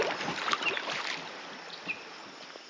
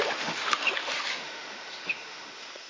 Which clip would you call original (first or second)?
first